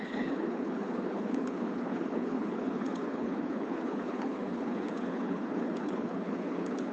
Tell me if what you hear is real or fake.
fake